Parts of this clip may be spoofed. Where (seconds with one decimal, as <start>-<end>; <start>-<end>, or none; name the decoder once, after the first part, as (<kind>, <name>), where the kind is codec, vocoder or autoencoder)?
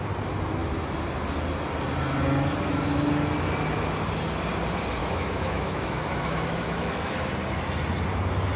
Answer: 5.0-7.3 (autoencoder, DAC-VAE)